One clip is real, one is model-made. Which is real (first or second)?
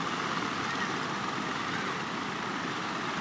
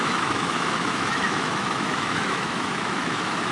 first